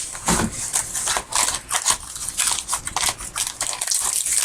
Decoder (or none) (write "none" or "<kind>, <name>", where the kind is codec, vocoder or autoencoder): none